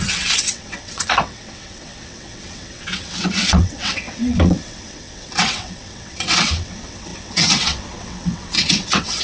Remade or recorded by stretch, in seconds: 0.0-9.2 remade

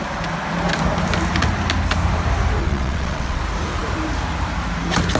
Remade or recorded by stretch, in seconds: 0.0-2.6 recorded; 2.6-3.4 remade; 3.4-5.2 recorded

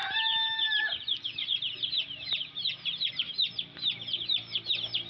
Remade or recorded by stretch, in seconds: 0.0-5.1 recorded

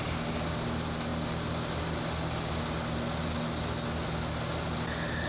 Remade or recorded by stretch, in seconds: 0.0-5.3 recorded

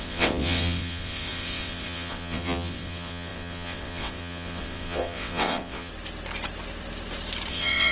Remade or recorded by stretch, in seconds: 0.0-5.9 remade; 5.9-7.5 recorded; 7.5-7.9 remade

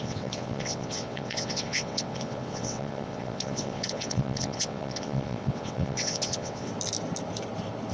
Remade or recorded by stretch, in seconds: 0.0-6.7 remade; 6.7-7.9 recorded

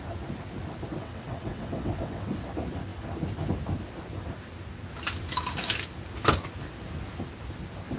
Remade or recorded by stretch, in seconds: 0.0-1.0 recorded; 1.0-2.3 remade; 2.3-8.0 recorded

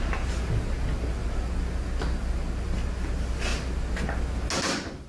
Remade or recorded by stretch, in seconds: 0.0-5.1 recorded